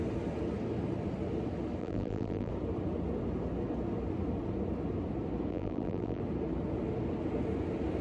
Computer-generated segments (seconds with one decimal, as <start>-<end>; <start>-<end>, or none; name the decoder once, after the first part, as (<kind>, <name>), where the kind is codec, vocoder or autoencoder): 1.8-2.5 (vocoder, BigVGAN v2); 5.5-6.2

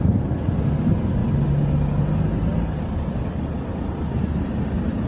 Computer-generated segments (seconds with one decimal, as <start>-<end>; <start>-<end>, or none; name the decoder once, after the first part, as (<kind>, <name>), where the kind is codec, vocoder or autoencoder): 2.5-3.5 (vocoder, BigVGAN v2)

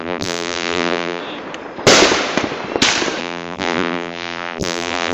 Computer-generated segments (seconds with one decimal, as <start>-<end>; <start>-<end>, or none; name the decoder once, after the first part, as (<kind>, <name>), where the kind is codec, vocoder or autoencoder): 0.0-1.2 (vocoder, BigVGAN v2); 3.2-5.1

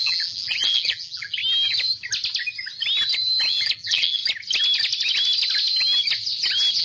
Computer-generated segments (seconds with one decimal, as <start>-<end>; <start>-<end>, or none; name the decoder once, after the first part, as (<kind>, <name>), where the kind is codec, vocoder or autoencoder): 0.0-1.4 (vocoder, BigVGAN v2); 3.5-4.2